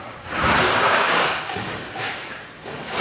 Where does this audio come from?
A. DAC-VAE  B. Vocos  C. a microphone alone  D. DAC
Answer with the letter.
D